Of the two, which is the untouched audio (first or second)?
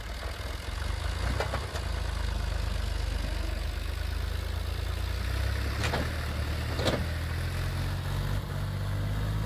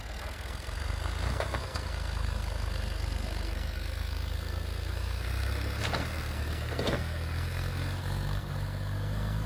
first